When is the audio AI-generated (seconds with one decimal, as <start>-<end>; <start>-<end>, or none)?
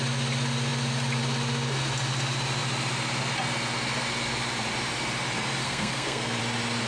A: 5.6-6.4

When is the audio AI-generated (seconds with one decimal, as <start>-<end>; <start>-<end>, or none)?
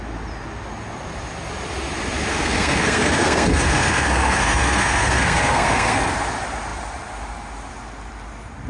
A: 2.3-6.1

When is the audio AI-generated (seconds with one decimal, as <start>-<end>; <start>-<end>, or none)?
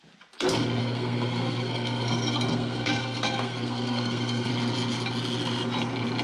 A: 0.8-4.5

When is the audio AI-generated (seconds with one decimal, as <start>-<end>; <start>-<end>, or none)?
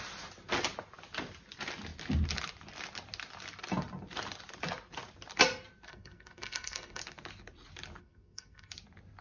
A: 5.9-7.0; 8.0-8.7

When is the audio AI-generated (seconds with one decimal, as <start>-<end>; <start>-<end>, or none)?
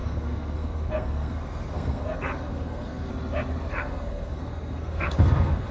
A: 0.0-3.1; 3.7-5.7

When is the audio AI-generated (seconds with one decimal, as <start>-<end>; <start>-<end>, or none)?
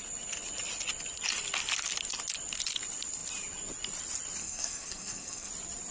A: 4.4-5.5